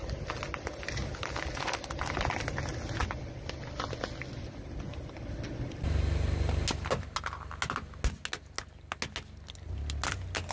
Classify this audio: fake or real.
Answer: real